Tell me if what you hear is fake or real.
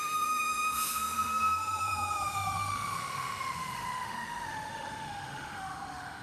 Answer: fake